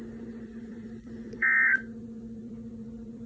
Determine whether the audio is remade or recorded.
remade